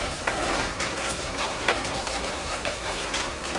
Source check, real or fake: fake